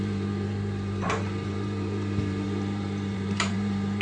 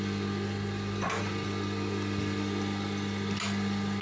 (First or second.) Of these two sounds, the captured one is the second